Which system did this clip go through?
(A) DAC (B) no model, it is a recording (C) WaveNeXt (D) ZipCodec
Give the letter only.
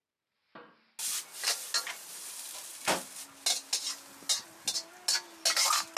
B